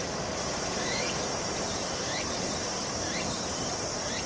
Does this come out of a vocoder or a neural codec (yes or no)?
no